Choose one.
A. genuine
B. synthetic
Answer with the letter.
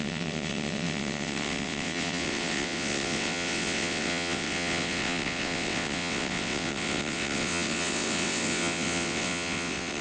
B